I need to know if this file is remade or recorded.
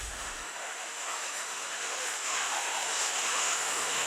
remade